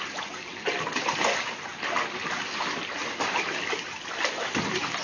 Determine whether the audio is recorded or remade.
recorded